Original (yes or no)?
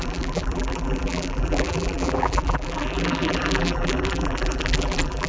no